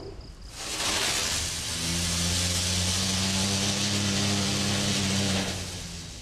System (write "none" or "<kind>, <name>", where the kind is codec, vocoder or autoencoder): none